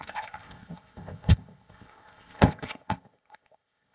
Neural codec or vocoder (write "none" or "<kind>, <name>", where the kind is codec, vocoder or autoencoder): codec, ZipCodec